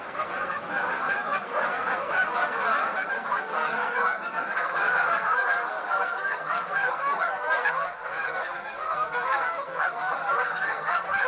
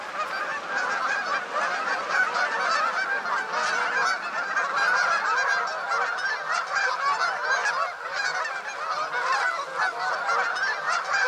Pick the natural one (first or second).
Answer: second